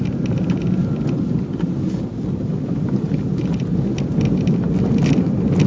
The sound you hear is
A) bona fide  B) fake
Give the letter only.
A